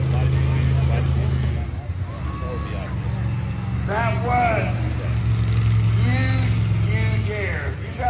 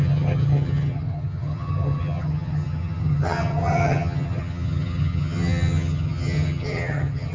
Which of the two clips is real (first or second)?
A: first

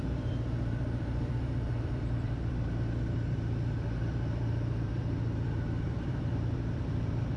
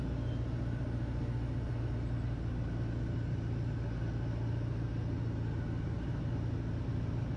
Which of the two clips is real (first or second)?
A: second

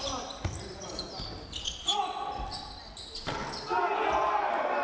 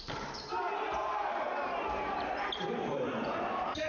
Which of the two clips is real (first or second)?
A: first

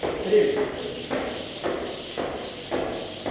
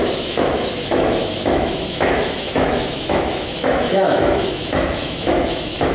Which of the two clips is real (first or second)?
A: first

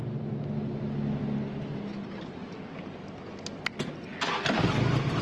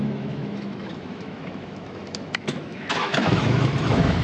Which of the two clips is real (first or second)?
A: first